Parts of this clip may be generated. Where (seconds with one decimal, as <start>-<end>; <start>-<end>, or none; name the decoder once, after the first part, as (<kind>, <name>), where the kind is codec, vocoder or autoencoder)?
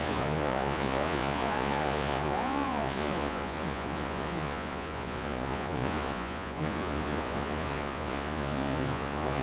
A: 0.0-9.4 (vocoder, Vocos)